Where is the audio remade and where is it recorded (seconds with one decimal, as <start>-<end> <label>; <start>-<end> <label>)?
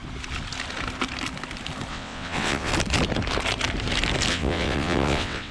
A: 0.0-1.9 recorded; 1.9-2.7 remade; 2.7-4.3 recorded; 4.3-5.5 remade